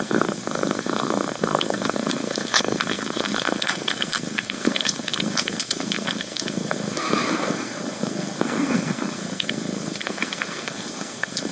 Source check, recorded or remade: remade